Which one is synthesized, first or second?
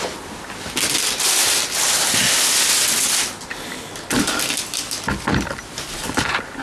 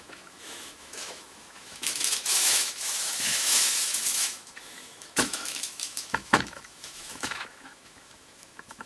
second